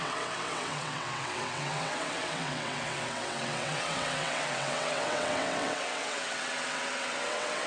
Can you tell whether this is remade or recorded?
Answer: remade